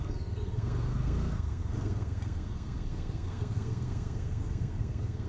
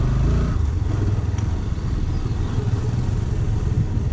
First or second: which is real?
second